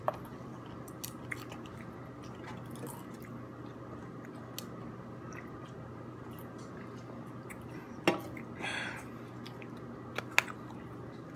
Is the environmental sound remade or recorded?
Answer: recorded